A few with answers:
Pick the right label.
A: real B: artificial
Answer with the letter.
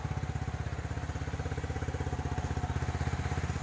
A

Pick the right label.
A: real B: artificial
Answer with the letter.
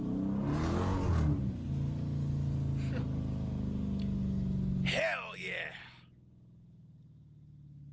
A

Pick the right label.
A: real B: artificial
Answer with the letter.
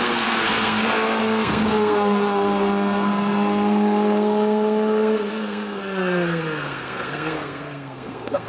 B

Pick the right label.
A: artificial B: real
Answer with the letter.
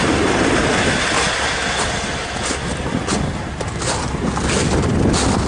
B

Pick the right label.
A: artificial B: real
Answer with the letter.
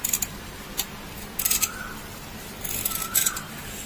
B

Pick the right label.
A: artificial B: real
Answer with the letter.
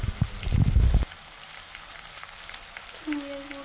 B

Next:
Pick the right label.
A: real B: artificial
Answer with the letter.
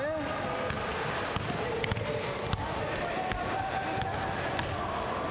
A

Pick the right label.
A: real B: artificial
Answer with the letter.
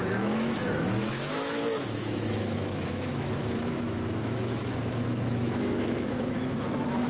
B